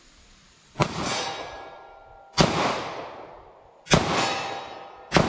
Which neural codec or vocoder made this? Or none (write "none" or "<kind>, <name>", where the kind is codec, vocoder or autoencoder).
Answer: none